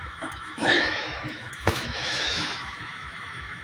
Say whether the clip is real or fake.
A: fake